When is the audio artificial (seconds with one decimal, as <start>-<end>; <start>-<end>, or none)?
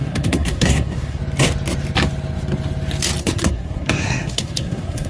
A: 0.0-1.2; 3.2-5.1